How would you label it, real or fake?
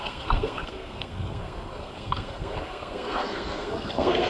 fake